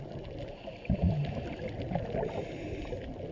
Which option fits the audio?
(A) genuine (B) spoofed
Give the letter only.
A